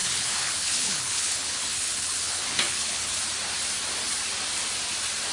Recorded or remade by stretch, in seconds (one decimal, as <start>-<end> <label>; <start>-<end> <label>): 0.0-3.2 remade; 3.2-5.3 recorded

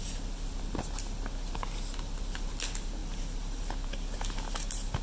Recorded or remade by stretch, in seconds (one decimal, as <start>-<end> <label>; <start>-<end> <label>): 0.0-5.0 recorded

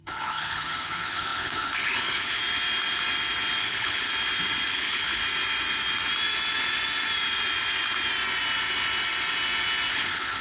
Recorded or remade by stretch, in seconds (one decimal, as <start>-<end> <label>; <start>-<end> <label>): 0.0-2.4 remade; 2.4-3.6 recorded; 3.6-4.1 remade; 4.1-4.7 recorded; 4.7-5.2 remade; 5.2-9.9 recorded; 9.9-10.4 remade

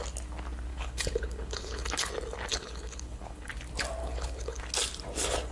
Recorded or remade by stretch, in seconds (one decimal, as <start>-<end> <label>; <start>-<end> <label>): 0.0-0.7 recorded; 0.7-2.1 remade; 2.1-2.5 recorded; 2.5-3.5 remade; 3.5-4.0 recorded; 4.0-4.6 remade; 4.6-5.5 recorded